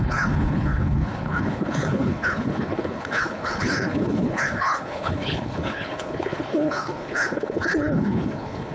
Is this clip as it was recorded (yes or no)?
no